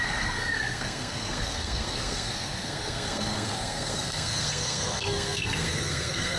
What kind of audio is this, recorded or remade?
remade